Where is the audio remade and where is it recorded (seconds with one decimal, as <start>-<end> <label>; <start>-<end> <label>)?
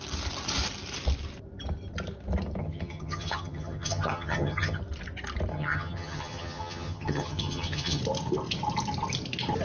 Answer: 0.0-2.6 recorded; 2.6-4.8 remade; 4.8-5.5 recorded; 5.5-8.0 remade; 8.0-9.6 recorded